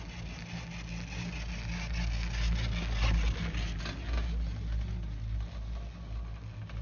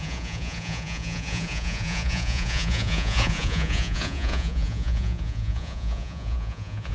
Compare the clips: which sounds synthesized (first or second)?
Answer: second